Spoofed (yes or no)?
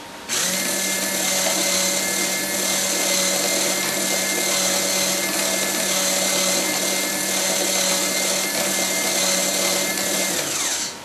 no